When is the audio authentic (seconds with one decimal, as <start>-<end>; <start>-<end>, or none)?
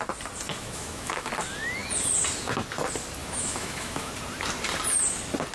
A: 0.0-0.5; 1.3-3.2; 4.1-5.5